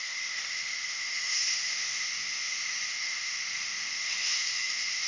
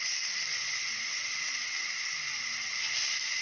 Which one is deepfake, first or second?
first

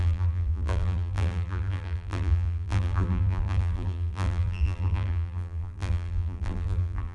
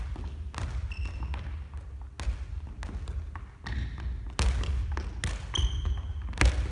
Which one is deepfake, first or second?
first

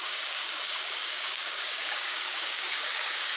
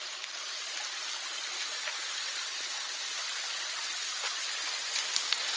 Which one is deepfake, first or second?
first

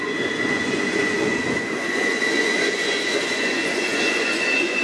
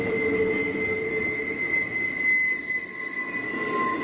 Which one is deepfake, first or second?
first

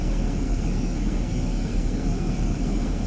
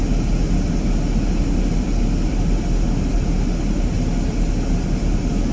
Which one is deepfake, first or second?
first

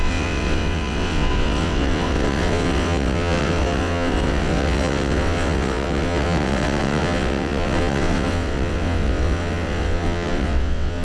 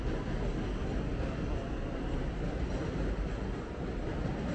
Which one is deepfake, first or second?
first